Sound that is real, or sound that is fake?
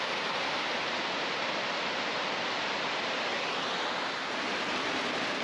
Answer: real